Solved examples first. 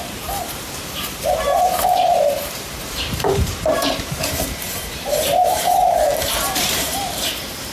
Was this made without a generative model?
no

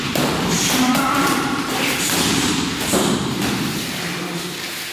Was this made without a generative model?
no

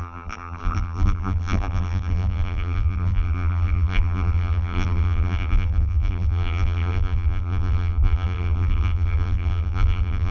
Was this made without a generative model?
no